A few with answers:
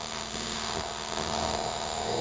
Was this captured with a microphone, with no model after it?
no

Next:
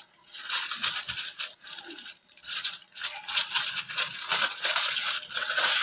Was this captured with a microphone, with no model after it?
no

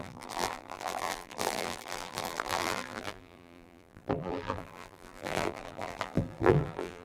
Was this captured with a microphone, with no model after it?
no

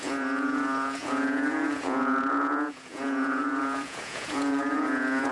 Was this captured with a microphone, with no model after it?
no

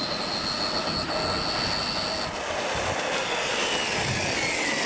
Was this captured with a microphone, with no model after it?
yes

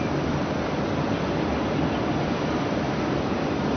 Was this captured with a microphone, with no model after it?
no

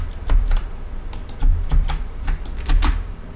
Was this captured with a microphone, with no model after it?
yes